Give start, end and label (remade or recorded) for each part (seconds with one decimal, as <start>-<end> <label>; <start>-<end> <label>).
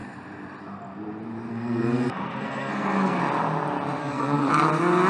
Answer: 0.0-1.5 recorded; 1.5-3.2 remade; 3.2-4.0 recorded; 4.0-4.5 remade; 4.5-5.1 recorded